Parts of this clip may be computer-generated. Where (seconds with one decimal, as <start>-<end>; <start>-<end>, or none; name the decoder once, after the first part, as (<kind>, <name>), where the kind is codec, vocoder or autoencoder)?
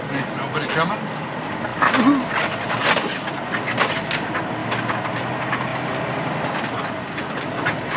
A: 1.7-2.7 (vocoder, BigVGAN v2); 4.6-5.1; 5.7-6.8